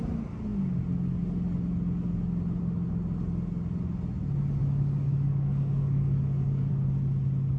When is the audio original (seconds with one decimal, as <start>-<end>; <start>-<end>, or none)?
0.0-4.6; 6.7-7.6